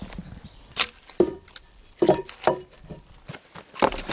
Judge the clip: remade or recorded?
recorded